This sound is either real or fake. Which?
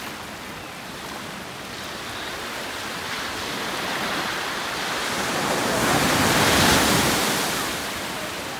real